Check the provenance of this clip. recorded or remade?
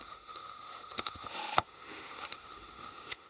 remade